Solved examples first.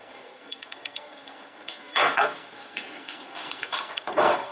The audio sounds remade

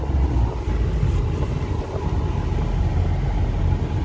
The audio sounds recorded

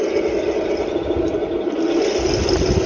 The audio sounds recorded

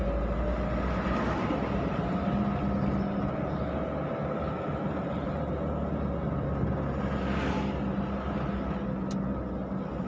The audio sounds recorded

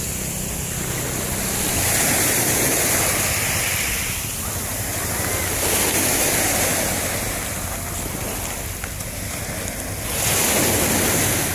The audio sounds recorded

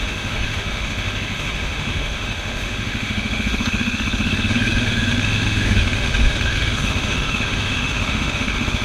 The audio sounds remade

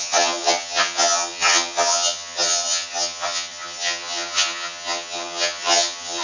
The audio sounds remade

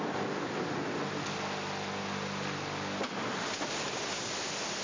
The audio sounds recorded